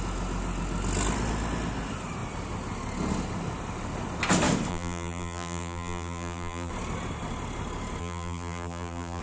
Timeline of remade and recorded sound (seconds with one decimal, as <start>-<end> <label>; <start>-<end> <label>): 0.0-4.7 recorded; 4.7-6.7 remade; 6.7-8.0 recorded; 8.0-9.2 remade